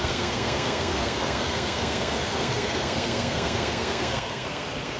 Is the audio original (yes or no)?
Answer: no